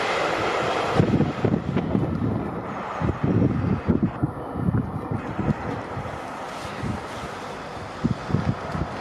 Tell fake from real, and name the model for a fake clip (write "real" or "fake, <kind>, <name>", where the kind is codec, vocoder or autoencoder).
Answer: real